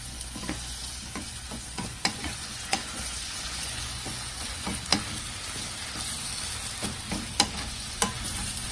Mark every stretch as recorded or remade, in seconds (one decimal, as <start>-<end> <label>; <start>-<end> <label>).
0.0-4.9 remade; 4.9-7.7 recorded; 7.7-8.7 remade